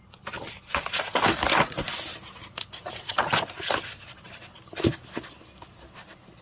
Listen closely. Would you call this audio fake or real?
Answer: real